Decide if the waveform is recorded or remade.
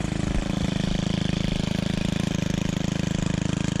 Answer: recorded